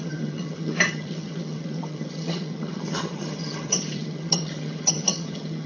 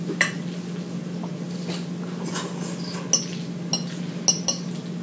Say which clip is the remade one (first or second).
first